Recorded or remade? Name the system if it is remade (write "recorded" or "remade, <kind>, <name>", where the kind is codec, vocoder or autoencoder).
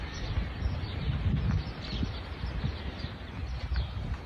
recorded